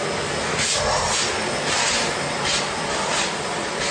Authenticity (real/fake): real